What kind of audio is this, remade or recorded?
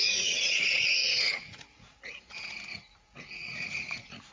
remade